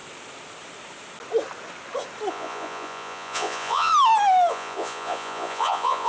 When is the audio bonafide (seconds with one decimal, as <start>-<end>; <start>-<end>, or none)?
0.0-2.3; 3.9-4.5